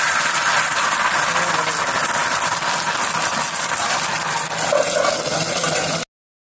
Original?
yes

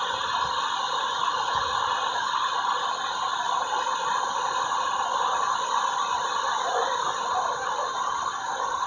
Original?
yes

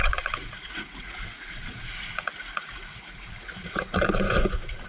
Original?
no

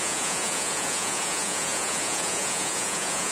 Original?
no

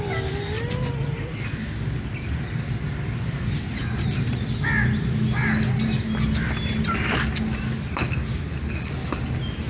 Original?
yes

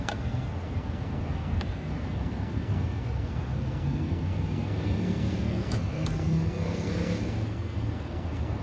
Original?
no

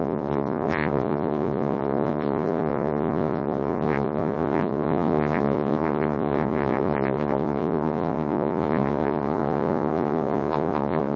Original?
no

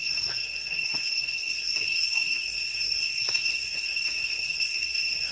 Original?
no